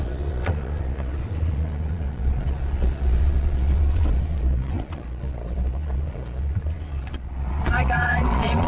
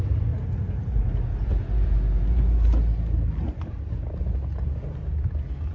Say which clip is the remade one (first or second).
first